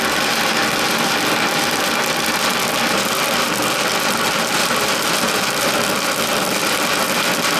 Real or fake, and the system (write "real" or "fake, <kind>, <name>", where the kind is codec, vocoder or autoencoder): real